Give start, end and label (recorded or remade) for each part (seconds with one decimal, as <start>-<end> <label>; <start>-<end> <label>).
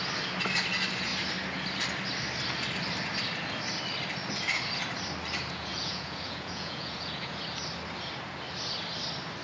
0.0-5.7 recorded; 5.7-7.4 remade; 7.4-9.4 recorded